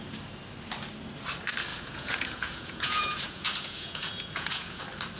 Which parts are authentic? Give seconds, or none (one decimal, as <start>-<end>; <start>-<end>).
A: 0.0-1.7; 4.8-5.2